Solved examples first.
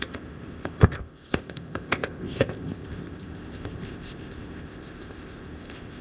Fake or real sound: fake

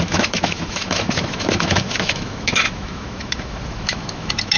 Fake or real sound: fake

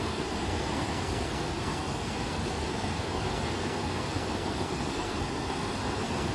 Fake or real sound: fake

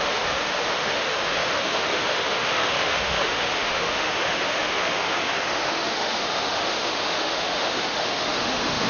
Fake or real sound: fake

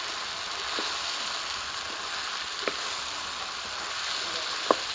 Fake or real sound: real